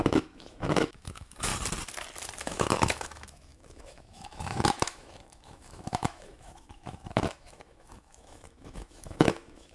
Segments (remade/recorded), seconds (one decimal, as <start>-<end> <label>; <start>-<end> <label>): 0.0-1.5 remade; 1.5-2.4 recorded; 2.4-9.7 remade